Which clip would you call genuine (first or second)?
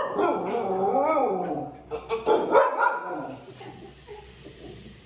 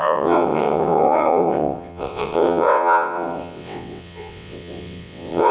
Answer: first